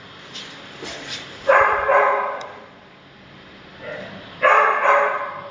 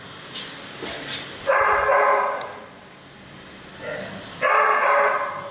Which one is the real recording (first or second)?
second